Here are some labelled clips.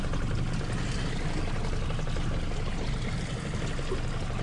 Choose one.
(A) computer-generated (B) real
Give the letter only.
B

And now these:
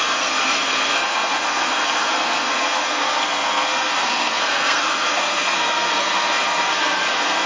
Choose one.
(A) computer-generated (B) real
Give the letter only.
A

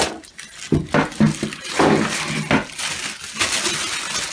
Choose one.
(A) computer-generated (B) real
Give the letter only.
B